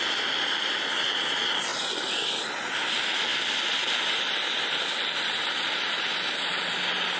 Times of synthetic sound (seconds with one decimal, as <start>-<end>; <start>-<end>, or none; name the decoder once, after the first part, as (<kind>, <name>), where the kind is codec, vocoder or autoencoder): none